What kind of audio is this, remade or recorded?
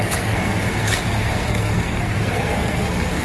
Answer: remade